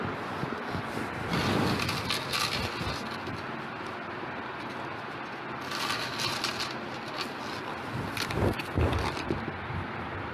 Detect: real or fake real